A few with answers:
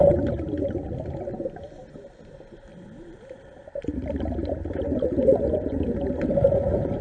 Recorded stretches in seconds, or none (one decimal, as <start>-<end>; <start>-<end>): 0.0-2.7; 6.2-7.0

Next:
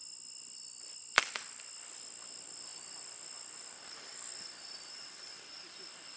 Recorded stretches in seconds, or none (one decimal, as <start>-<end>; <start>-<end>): 0.0-1.0

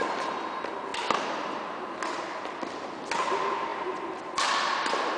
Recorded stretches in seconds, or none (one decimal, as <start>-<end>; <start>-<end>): 0.0-5.2

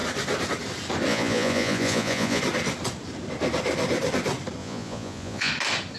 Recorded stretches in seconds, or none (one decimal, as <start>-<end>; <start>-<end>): 0.0-1.1; 2.4-4.6; 5.5-6.0

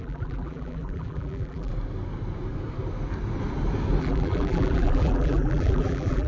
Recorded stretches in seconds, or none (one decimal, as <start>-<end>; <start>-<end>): 1.7-4.0